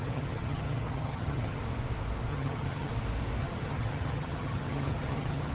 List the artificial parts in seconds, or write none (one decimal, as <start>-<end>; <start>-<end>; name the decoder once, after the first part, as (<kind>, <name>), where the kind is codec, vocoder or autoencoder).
0.0-1.6 (vocoder, HiFi-GAN); 2.3-2.9; 3.4-5.5